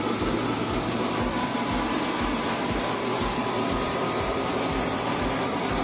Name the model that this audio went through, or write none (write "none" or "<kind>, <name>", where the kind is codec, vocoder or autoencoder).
vocoder, BigVGAN v2